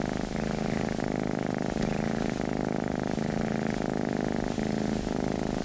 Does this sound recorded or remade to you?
recorded